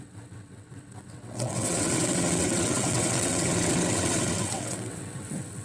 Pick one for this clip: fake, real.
fake